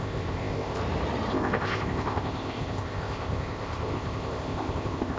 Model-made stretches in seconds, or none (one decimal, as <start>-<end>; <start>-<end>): 0.0-0.8; 1.3-5.2